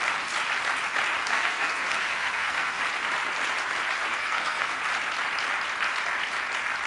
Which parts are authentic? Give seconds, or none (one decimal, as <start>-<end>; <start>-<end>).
0.0-1.2; 2.8-4.1; 4.8-6.9